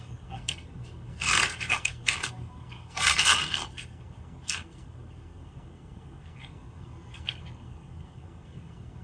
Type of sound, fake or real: fake